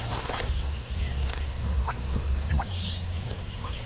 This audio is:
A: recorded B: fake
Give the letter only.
B